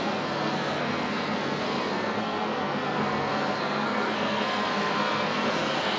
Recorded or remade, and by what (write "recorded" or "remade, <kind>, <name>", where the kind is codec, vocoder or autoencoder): remade, codec, SNAC